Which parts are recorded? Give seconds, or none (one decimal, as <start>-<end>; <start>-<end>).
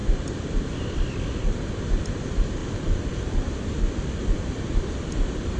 0.0-5.6